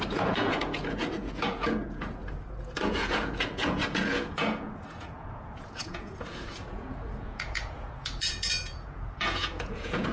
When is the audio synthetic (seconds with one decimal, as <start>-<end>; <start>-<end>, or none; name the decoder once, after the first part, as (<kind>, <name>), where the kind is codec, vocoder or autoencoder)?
0.0-10.1 (vocoder, Vocos)